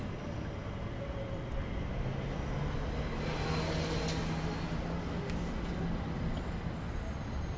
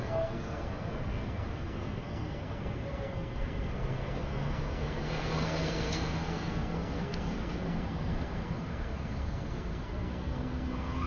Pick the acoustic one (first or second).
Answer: first